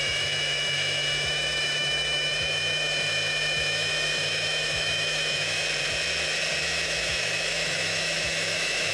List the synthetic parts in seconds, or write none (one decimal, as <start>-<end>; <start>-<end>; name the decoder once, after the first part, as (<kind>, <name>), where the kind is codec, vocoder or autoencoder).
0.0-5.6 (autoencoder, DAC-VAE); 6.6-8.9